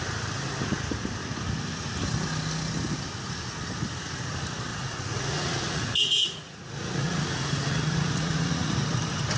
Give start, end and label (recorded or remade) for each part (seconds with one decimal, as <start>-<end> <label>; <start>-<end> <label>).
0.0-4.7 recorded; 4.7-8.8 remade; 8.8-9.4 recorded